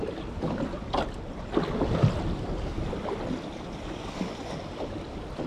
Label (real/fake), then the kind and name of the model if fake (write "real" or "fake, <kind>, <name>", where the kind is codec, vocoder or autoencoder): real